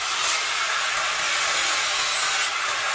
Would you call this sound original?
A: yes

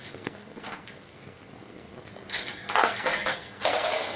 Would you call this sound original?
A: no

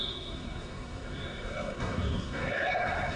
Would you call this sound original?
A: no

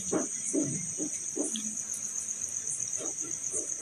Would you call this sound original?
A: yes